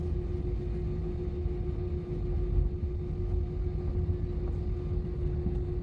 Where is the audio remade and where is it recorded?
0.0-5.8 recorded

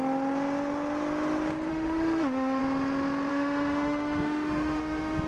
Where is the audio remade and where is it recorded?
0.0-1.7 recorded; 1.7-2.6 remade; 2.6-3.3 recorded; 3.3-5.3 remade

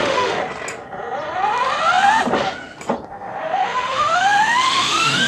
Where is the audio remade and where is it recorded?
0.0-0.4 remade; 0.4-3.1 recorded; 3.1-5.3 remade

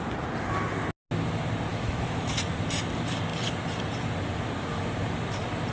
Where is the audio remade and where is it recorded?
0.0-1.7 recorded; 1.7-2.3 remade; 2.3-5.7 recorded

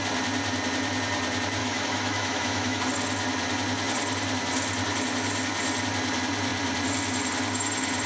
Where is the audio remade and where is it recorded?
0.0-1.6 recorded; 1.6-2.8 remade; 2.8-8.1 recorded

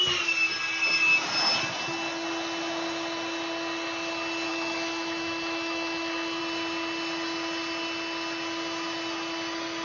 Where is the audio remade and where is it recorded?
0.0-4.5 recorded; 4.5-6.4 remade; 6.4-9.8 recorded

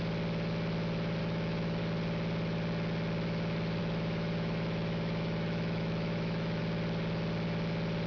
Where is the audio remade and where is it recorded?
0.0-1.2 recorded; 1.2-1.8 remade; 1.8-3.8 recorded; 3.8-6.6 remade; 6.6-8.1 recorded

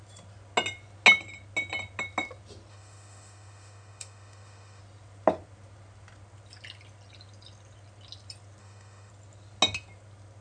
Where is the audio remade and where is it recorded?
0.0-2.7 recorded; 2.7-4.8 remade; 4.8-8.6 recorded; 8.6-9.1 remade; 9.1-10.4 recorded